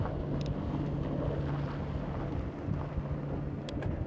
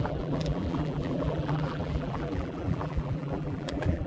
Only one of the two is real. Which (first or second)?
first